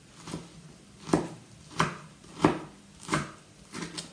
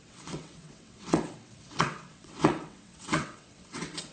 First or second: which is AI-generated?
second